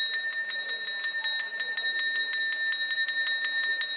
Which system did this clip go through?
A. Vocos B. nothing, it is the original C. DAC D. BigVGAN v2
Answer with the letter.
B